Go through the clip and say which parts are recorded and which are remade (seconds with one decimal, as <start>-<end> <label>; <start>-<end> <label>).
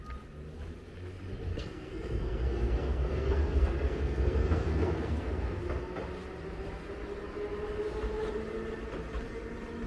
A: 0.0-1.5 recorded; 1.5-5.6 remade; 5.6-9.9 recorded